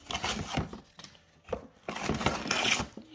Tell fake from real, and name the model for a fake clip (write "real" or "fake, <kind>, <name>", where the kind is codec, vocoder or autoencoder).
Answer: real